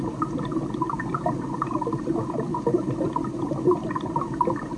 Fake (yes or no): yes